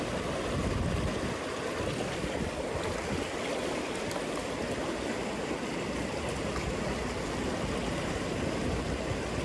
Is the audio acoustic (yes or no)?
yes